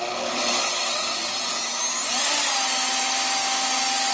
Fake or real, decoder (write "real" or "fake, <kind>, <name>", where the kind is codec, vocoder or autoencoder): real